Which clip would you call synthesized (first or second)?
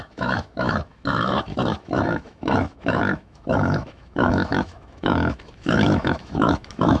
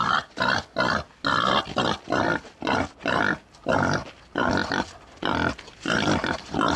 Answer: first